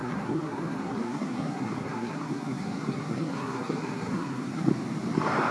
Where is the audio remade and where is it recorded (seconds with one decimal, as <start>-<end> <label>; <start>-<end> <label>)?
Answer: 0.0-4.7 remade; 4.7-5.5 recorded